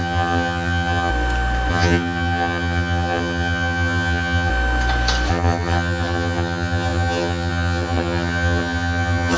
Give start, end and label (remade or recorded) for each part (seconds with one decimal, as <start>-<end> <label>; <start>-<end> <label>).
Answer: 0.0-1.1 remade; 1.1-1.7 recorded; 1.7-4.5 remade; 4.5-5.3 recorded; 5.3-9.4 remade

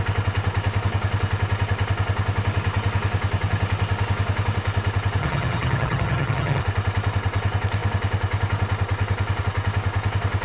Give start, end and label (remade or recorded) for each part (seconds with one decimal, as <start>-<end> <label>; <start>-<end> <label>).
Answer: 0.0-5.2 recorded; 5.2-6.6 remade; 6.6-10.4 recorded

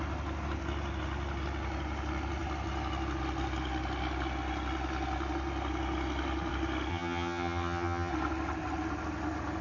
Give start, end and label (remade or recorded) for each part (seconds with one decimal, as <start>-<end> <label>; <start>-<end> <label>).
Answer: 0.0-6.9 recorded; 6.9-8.1 remade; 8.1-9.6 recorded

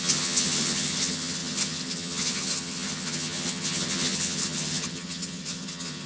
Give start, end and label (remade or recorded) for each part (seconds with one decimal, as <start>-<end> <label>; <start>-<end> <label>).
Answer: 0.0-6.1 remade

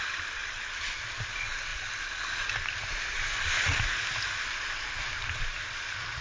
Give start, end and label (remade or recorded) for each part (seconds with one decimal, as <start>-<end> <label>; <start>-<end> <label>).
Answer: 0.0-6.2 recorded